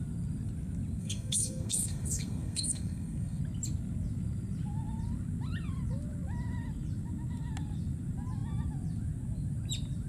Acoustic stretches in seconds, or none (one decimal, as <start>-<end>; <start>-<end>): 0.0-1.0; 3.4-10.1